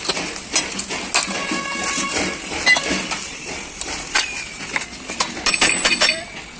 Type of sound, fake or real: real